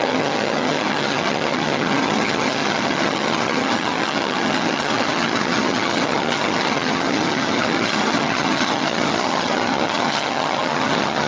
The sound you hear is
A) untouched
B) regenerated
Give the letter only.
B